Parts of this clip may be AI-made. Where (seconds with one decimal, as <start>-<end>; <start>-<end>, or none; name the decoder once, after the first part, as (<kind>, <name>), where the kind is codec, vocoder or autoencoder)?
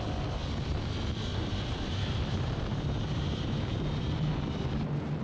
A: 1.4-4.5 (vocoder, BigVGAN v2)